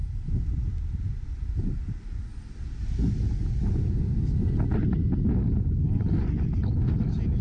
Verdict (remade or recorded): recorded